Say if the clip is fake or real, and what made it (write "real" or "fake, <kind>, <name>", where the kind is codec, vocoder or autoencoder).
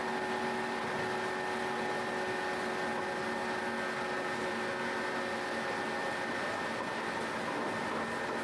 real